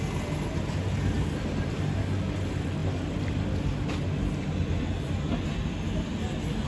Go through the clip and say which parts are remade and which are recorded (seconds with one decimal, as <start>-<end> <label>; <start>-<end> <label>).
0.0-6.7 recorded